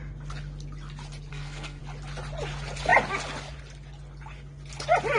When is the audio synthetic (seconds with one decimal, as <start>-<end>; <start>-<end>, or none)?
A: 1.3-1.8